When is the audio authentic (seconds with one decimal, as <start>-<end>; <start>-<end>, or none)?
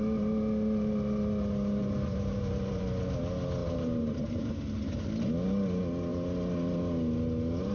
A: 0.0-1.8; 2.8-3.6; 4.5-7.7